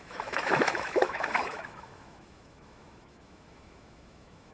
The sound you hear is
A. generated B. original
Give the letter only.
A